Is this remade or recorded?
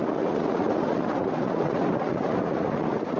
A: remade